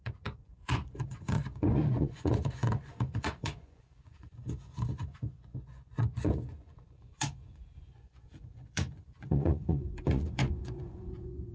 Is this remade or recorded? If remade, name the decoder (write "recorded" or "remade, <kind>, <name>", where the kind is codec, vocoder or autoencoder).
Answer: remade, vocoder, Vocos